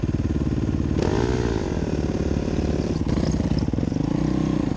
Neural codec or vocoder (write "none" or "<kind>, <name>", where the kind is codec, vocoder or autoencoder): none